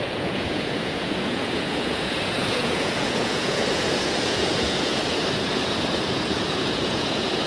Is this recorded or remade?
remade